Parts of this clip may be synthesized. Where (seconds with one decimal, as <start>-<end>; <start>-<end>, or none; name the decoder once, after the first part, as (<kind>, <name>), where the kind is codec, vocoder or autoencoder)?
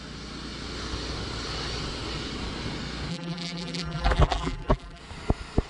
3.1-5.0 (vocoder, BigVGAN v2)